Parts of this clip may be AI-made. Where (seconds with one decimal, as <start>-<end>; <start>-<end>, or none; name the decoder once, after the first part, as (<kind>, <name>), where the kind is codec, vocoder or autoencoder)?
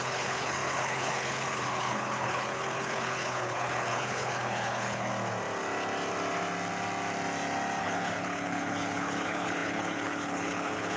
0.0-5.1 (codec, HILCodec); 7.8-11.0